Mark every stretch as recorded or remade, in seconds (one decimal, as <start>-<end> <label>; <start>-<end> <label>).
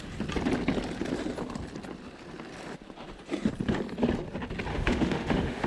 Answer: 0.0-4.7 recorded; 4.7-5.7 remade